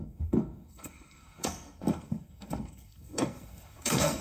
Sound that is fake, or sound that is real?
fake